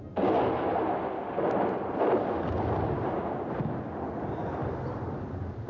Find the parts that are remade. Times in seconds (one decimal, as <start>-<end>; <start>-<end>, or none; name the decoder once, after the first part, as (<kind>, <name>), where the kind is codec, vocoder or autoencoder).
none